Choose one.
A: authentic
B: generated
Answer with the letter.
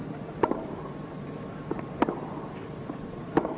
B